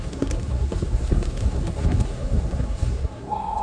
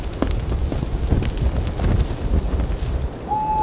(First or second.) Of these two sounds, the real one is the second